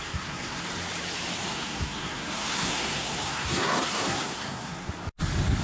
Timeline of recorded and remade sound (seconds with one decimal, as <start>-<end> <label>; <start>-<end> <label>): 0.0-0.6 remade; 0.6-1.5 recorded; 1.5-4.9 remade; 4.9-5.6 recorded